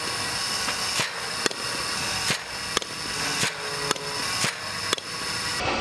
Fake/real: real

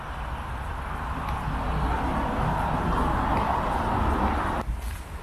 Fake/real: real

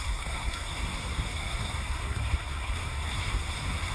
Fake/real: fake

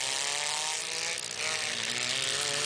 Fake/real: real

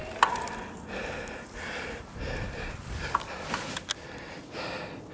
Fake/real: real